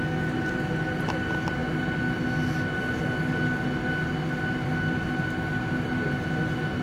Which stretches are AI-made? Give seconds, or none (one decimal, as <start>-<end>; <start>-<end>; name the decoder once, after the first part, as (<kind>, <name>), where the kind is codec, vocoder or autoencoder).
none